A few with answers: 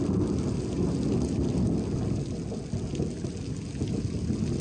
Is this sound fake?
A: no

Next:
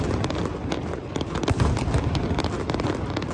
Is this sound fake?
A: yes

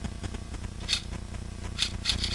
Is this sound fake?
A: no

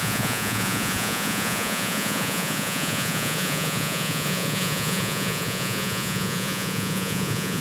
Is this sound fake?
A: yes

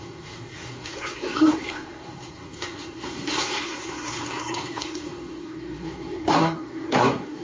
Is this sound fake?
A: yes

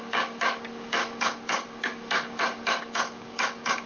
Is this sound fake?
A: yes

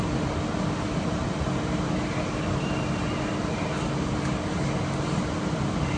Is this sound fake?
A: no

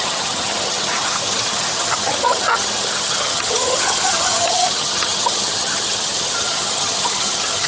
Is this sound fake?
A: yes